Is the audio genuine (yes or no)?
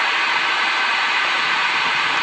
no